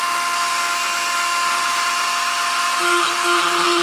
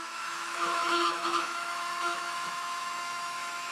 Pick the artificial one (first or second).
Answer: second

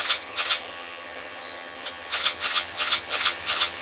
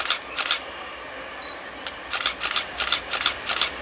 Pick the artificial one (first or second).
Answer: first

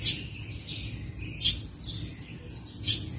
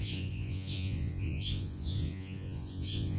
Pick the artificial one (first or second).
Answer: second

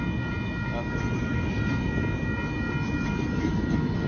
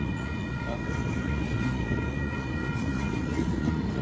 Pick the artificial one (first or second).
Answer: second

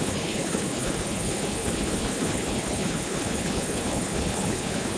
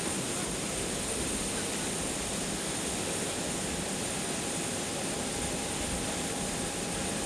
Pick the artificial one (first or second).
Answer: first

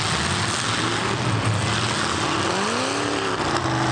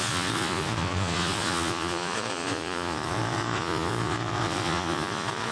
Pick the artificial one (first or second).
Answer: second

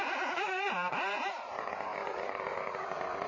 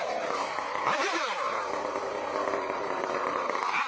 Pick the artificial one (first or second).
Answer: second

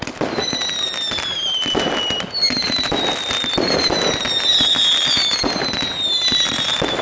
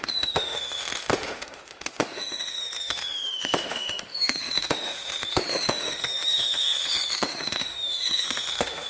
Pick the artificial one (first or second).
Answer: second